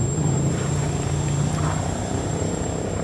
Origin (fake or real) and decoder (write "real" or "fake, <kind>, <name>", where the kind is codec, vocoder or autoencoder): fake, vocoder, BigVGAN v2